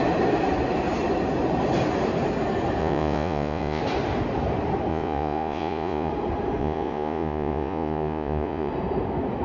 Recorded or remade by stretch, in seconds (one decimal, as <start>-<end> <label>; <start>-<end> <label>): 0.0-2.8 recorded; 2.8-3.8 remade; 3.8-4.9 recorded; 4.9-6.1 remade; 6.1-6.6 recorded; 6.6-8.7 remade; 8.7-9.4 recorded